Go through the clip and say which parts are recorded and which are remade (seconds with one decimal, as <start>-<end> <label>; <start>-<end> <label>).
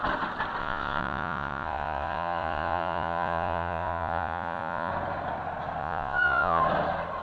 0.0-0.6 recorded; 0.6-4.9 remade; 4.9-5.8 recorded; 5.8-6.6 remade; 6.6-7.2 recorded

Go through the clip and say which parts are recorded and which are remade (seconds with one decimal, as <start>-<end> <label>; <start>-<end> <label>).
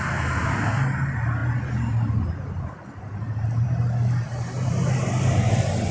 0.0-5.9 recorded